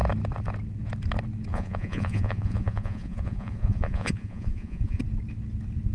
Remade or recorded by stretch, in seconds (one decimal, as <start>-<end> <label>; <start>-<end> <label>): 0.0-1.5 recorded; 1.5-5.0 remade; 5.0-5.9 recorded